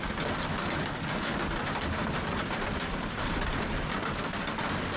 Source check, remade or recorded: recorded